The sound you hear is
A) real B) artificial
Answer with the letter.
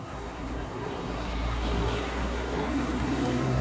B